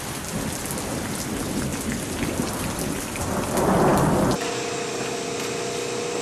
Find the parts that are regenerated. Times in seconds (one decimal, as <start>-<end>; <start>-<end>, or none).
1.7-3.0